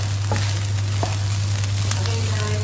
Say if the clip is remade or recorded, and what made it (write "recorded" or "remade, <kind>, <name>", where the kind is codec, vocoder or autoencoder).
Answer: recorded